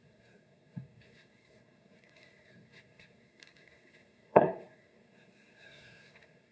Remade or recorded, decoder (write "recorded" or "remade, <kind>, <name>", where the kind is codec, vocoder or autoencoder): remade, codec, SNAC